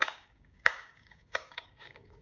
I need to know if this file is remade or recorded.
remade